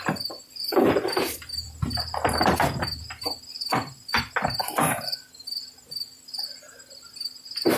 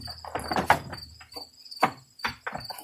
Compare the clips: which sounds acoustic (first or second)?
second